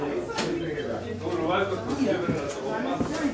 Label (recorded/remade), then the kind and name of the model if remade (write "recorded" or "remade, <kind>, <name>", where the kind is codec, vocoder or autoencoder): recorded